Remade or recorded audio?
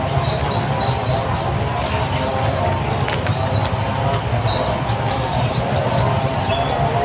recorded